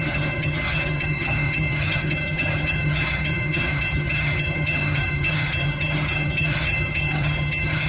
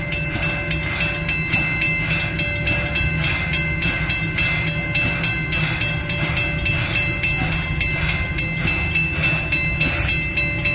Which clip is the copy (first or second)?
first